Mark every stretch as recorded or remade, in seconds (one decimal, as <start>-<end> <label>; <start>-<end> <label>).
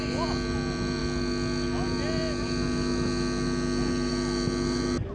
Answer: 0.0-5.1 recorded